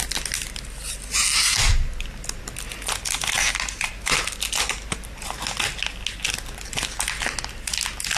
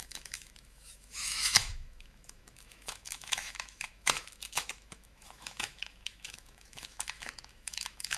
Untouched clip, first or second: first